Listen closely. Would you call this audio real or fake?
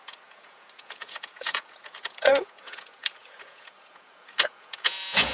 fake